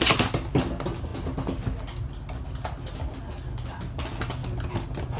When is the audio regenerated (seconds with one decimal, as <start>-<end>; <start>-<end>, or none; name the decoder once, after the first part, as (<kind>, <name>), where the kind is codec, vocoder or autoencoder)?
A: none